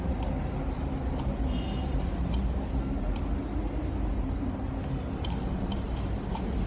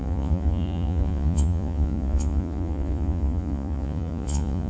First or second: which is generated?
second